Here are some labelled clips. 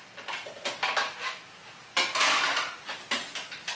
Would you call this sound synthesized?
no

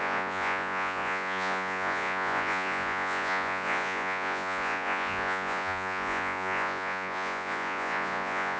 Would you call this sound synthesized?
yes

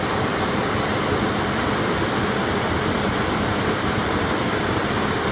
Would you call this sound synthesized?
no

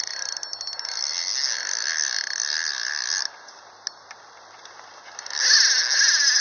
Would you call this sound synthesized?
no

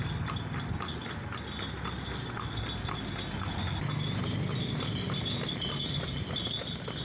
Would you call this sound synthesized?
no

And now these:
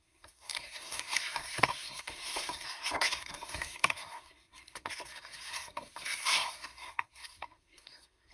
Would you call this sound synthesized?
yes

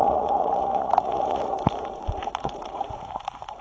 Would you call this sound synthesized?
yes